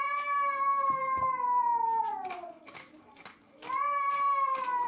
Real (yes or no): yes